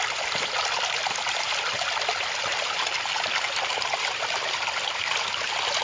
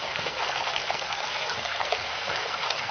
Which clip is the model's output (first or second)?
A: second